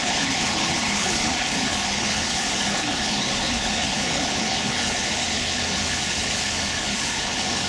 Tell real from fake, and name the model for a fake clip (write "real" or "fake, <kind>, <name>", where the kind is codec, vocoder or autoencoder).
fake, codec, HILCodec